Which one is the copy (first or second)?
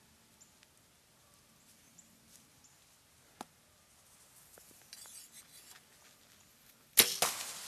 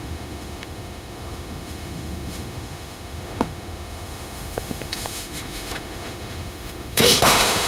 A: second